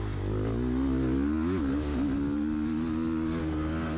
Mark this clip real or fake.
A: real